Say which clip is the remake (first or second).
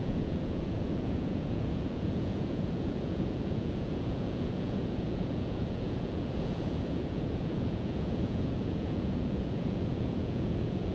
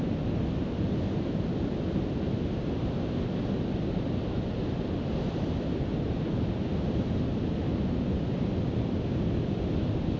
first